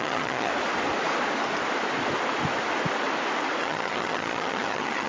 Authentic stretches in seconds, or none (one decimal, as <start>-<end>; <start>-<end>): 0.5-3.6